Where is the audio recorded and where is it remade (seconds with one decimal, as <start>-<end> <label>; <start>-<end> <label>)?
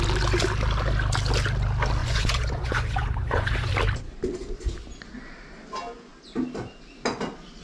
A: 0.0-2.0 recorded; 2.0-3.7 remade; 3.7-7.6 recorded